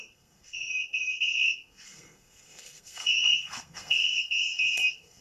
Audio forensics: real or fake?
fake